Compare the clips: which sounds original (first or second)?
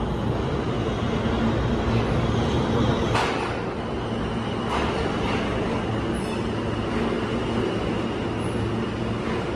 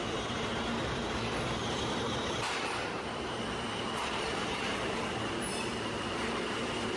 first